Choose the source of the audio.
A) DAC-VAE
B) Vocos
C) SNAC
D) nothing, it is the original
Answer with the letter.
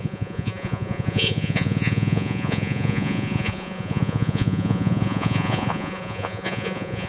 B